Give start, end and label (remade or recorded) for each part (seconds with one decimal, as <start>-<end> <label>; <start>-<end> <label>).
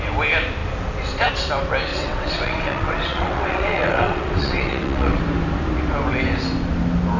0.0-1.9 recorded; 1.9-5.2 remade; 5.2-7.2 recorded